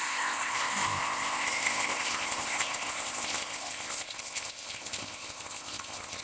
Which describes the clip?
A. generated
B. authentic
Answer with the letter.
A